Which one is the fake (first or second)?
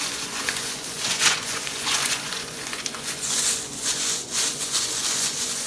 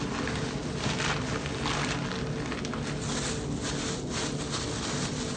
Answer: first